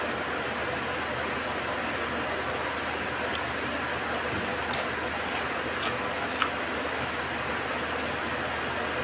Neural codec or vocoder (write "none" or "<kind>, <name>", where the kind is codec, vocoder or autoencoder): none